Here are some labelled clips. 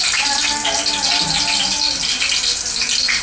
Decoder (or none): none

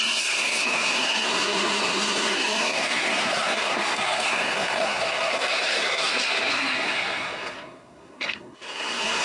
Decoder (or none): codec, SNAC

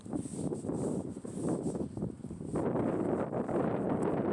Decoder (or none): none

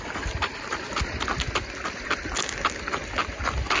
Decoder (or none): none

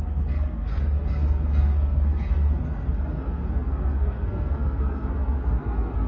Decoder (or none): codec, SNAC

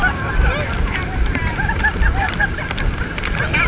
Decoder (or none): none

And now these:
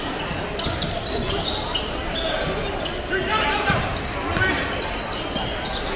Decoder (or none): none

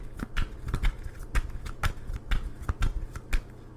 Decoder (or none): none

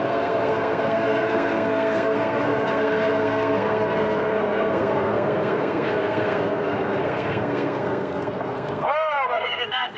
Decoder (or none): codec, SNAC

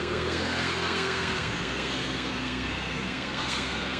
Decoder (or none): codec, SNAC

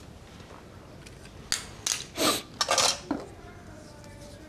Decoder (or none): none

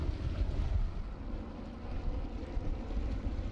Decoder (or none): none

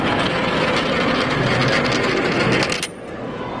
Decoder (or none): none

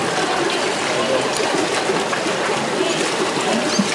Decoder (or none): none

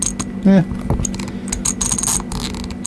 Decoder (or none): none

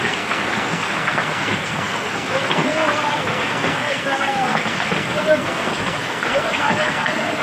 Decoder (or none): codec, SNAC